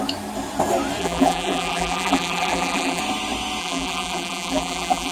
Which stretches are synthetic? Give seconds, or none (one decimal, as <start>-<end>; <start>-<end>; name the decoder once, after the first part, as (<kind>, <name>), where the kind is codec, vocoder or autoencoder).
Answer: 1.0-3.0 (vocoder, BigVGAN v2); 3.6-5.1